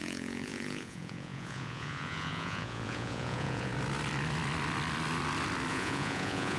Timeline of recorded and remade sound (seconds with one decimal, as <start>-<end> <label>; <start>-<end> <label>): 0.0-3.7 remade; 3.7-5.7 recorded; 5.7-6.6 remade